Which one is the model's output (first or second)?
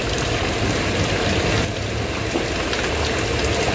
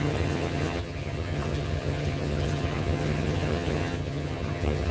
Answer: second